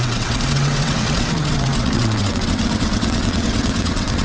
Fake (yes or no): yes